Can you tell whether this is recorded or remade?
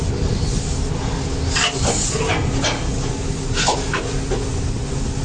recorded